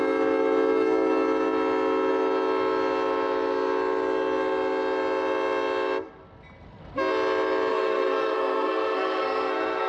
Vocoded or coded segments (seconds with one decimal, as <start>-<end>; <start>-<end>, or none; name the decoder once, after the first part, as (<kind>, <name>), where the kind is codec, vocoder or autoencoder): 7.7-9.9 (codec, SNAC)